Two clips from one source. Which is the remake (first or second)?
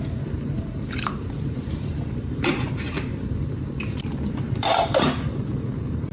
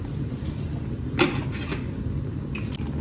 first